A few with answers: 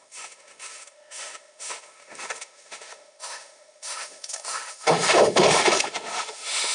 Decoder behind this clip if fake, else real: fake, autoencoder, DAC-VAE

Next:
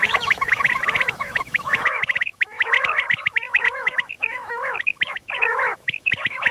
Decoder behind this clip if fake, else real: fake, autoencoder, DAC-VAE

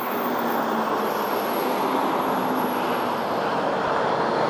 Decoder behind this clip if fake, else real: real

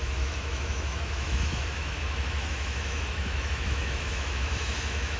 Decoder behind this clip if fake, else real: fake, autoencoder, DAC-VAE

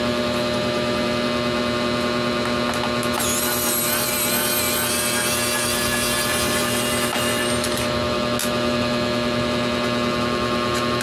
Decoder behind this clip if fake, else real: real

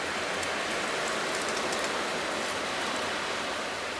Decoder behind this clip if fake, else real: real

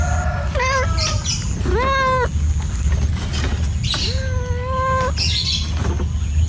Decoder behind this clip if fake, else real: real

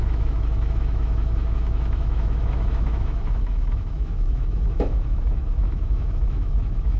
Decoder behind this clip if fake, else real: fake, autoencoder, DAC-VAE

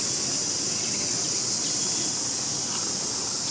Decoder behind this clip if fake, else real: real